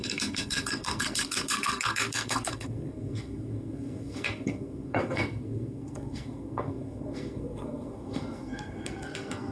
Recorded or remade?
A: remade